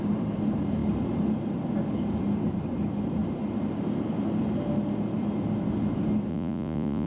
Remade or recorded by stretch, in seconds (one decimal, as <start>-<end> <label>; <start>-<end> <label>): 0.0-6.3 recorded; 6.3-7.1 remade